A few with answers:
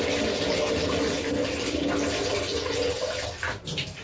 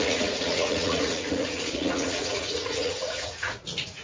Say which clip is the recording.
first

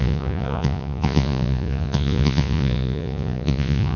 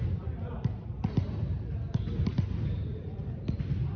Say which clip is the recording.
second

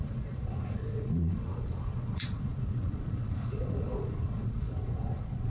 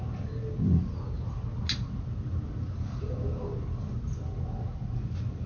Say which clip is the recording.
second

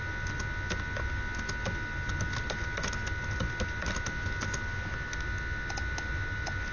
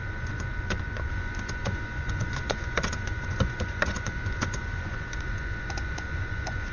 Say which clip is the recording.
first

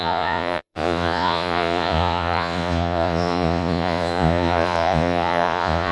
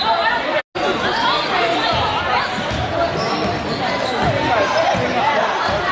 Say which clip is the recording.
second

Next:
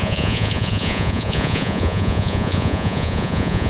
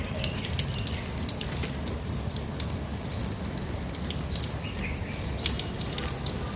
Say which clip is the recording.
second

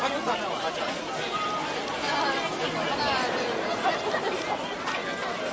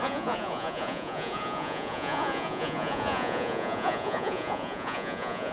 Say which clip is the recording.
first